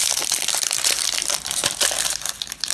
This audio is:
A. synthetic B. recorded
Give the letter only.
A